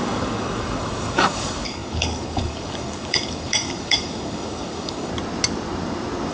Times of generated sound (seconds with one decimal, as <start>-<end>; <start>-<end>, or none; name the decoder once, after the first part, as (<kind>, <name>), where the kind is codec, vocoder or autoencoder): 0.0-5.1 (codec, DAC)